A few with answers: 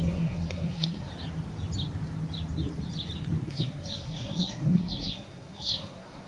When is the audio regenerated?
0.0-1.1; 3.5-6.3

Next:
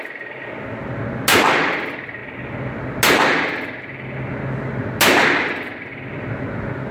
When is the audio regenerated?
none

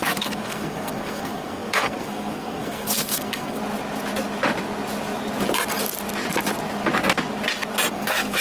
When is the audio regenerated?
0.0-3.6; 7.9-8.4

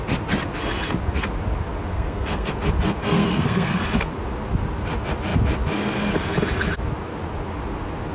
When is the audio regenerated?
1.9-2.5; 3.0-3.8

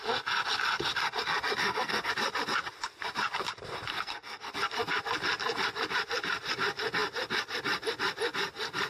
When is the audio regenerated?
1.6-2.1; 3.9-4.5

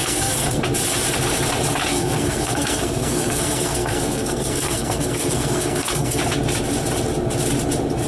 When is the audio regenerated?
0.0-0.6; 1.9-6.2